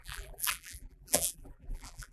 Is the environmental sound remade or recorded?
remade